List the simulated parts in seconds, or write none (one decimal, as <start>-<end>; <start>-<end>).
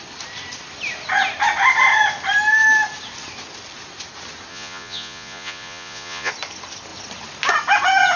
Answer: 4.5-6.3